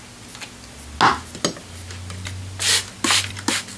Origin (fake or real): real